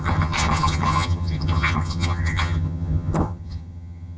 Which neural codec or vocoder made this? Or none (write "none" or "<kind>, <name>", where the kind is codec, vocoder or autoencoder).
vocoder, HiFi-GAN